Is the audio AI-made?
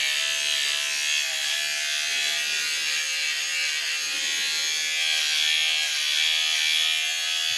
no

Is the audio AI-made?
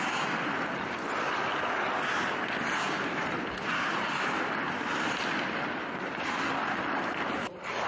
no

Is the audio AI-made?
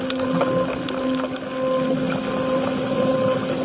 no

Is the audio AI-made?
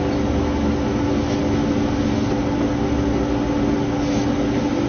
no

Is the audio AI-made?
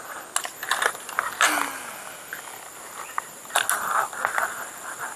no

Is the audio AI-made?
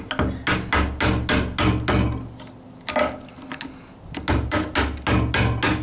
no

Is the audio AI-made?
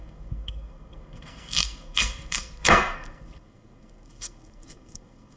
yes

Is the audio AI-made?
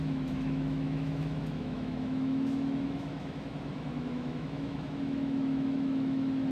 yes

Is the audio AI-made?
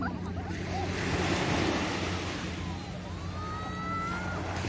no